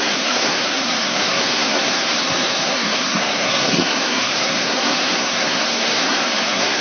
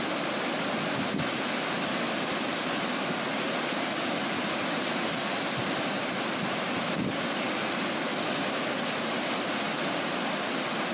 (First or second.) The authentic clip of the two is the second